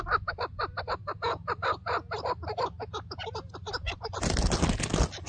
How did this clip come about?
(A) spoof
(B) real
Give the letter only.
B